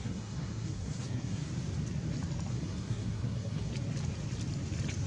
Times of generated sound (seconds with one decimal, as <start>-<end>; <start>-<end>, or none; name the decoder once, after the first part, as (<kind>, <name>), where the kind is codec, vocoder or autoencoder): 0.0-1.5 (codec, SNAC); 2.5-3.7